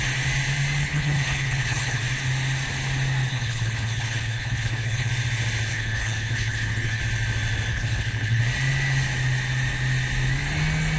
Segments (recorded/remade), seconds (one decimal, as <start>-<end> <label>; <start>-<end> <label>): 0.0-0.8 recorded; 0.8-2.0 remade; 2.0-3.3 recorded; 3.3-5.1 remade; 5.1-5.7 recorded; 5.7-7.0 remade; 7.0-7.7 recorded; 7.7-8.4 remade; 8.4-11.0 recorded